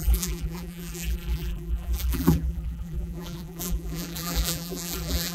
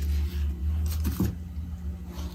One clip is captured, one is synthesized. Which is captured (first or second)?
second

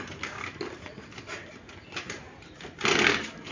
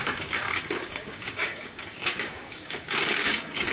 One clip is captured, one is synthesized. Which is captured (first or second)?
first